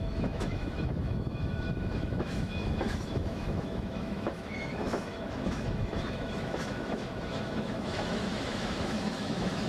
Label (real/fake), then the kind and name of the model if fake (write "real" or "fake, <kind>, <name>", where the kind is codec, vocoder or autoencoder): fake, autoencoder, DAC-VAE